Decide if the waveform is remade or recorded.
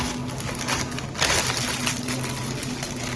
recorded